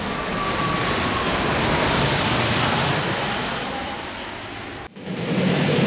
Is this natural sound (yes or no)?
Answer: yes